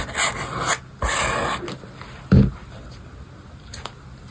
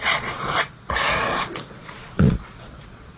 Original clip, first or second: first